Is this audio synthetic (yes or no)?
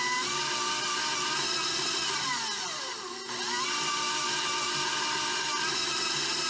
no